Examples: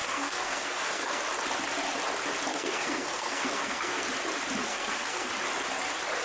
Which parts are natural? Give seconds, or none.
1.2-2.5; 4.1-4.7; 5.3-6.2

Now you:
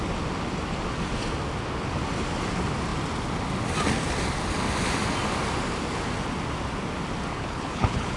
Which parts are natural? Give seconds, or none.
0.0-7.3

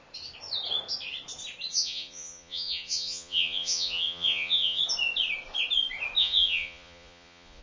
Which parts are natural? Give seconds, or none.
0.0-1.7; 4.8-6.2

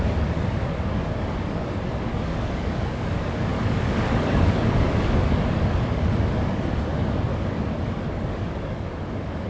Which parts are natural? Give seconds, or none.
none

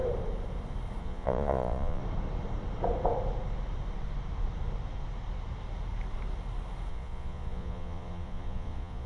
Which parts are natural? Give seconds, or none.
0.0-1.0; 2.0-6.9

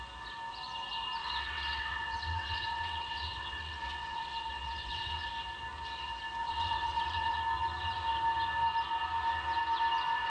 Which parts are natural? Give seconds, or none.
0.0-1.2; 5.3-6.4; 7.4-10.3

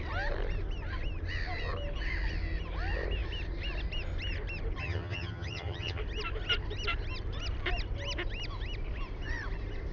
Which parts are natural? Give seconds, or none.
0.0-4.8; 6.0-9.9

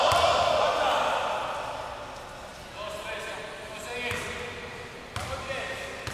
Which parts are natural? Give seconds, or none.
0.0-6.1